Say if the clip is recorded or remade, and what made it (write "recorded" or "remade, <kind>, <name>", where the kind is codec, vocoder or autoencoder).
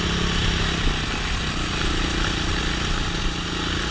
recorded